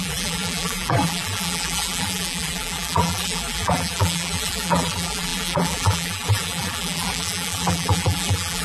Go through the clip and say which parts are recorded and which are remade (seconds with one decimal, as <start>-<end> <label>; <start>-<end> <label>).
0.0-8.6 remade